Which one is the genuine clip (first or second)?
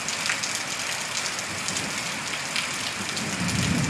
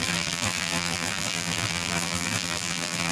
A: first